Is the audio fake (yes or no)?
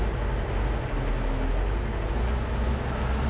no